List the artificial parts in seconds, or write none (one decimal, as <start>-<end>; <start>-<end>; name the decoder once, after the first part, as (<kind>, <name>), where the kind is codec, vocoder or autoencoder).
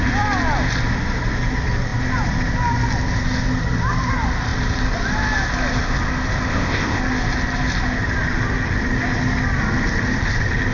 6.5-7.0 (codec, ZipCodec)